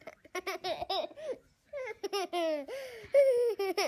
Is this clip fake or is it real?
real